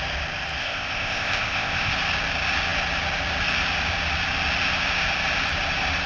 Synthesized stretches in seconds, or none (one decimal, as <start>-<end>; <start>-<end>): 0.6-1.9

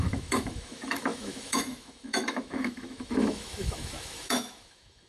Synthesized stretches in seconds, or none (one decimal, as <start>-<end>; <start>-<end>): 0.0-5.1

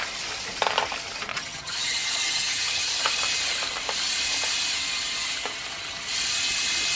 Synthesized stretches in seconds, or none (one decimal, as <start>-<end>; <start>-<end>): 1.3-3.2

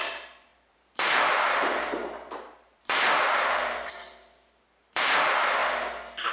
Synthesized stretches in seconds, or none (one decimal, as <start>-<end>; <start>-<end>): 0.0-5.6

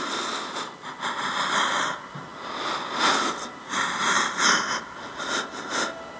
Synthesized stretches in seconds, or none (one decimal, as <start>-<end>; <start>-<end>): none

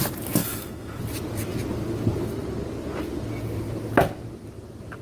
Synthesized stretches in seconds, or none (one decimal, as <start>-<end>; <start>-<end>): 0.4-1.0